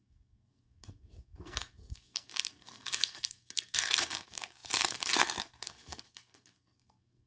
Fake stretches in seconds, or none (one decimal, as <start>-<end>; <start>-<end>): 0.0-7.3